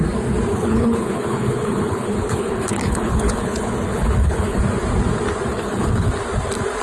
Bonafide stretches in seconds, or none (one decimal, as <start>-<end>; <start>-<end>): 0.0-0.5; 4.6-5.5; 6.1-6.8